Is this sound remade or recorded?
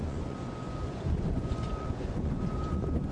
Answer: remade